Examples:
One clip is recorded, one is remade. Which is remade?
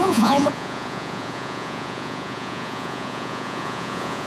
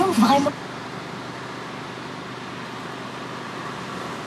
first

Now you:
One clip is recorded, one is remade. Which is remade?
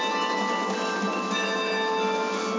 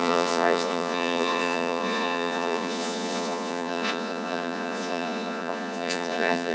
second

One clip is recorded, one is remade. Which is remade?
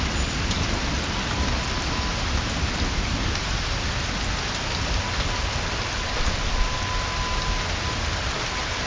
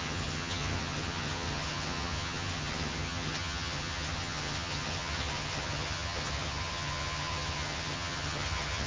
second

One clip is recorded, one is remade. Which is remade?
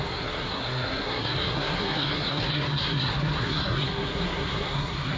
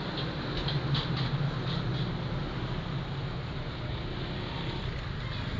first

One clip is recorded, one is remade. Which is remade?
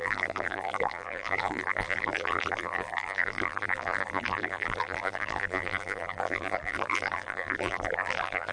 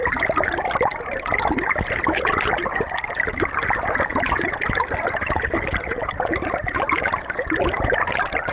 first